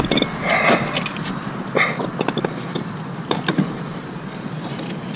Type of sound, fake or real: real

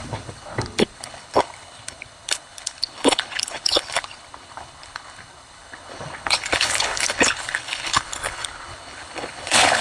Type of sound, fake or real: fake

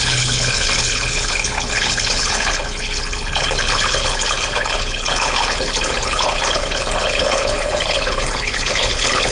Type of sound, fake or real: fake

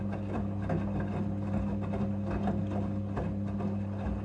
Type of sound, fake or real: real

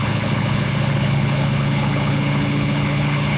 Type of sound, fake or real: fake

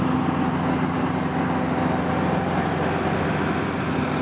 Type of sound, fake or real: real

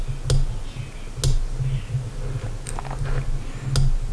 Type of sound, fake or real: real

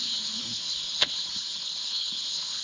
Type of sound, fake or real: fake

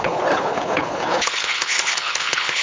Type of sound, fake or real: fake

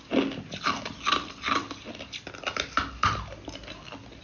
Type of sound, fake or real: real